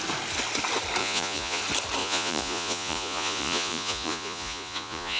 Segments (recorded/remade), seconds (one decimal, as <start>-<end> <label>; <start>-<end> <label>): 0.0-1.0 recorded; 1.0-1.6 remade; 1.6-2.0 recorded; 2.0-5.2 remade